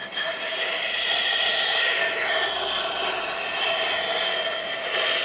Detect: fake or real real